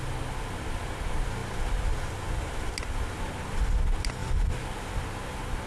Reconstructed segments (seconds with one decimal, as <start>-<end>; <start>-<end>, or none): none